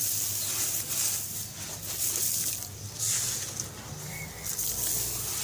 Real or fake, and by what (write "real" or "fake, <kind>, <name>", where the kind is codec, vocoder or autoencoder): real